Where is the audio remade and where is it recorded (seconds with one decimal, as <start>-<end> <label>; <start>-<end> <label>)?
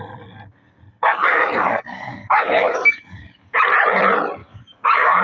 0.0-1.0 recorded; 1.0-3.6 remade; 3.6-4.4 recorded; 4.4-5.2 remade